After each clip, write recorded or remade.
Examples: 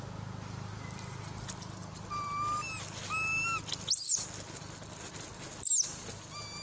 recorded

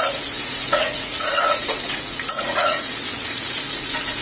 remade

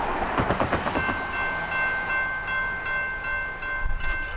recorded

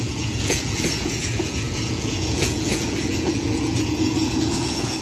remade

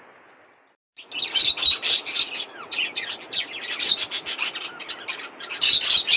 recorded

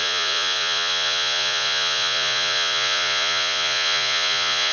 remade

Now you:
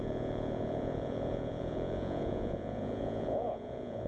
remade